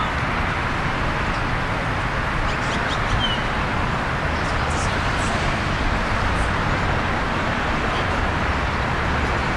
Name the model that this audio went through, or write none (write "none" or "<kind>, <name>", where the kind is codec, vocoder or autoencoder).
none